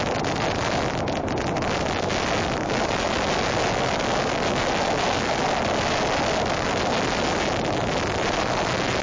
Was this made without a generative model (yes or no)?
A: yes